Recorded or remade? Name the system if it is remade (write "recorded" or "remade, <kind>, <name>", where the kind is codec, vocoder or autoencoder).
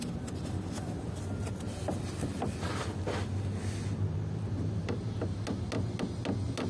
recorded